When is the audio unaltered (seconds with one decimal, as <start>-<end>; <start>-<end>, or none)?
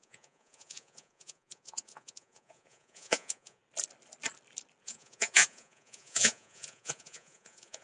3.6-4.8